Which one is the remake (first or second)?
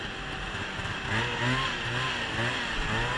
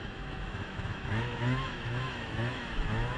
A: second